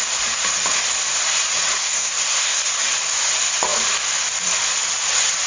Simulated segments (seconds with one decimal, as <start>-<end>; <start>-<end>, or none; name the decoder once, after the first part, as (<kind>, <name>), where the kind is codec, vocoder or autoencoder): 1.8-2.7 (codec, SNAC)